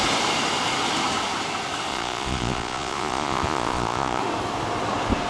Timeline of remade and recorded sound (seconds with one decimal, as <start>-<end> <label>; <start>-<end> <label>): 0.0-1.9 recorded; 1.9-4.2 remade; 4.2-5.3 recorded